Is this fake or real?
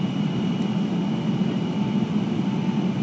real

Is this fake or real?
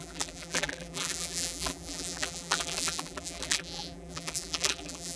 fake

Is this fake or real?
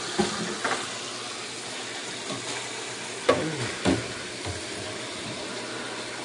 real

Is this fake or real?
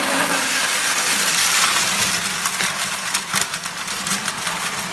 real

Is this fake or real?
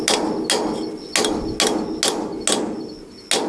real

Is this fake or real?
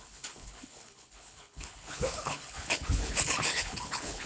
fake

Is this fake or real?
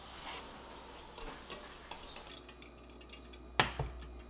real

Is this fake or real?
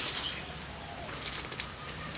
real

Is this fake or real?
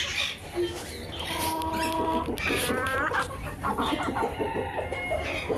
real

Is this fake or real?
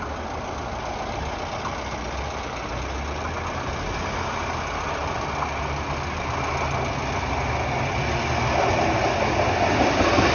real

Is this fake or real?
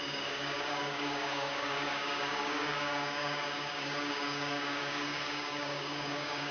fake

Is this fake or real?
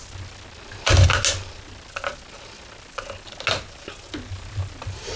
real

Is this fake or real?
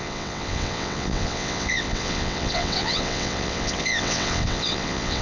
fake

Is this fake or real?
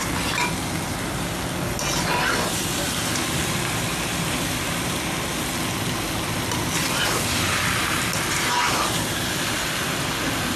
real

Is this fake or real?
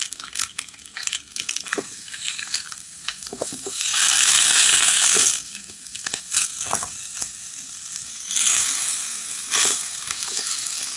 fake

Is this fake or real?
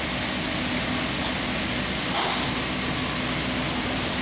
real